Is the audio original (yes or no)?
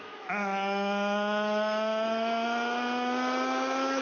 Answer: no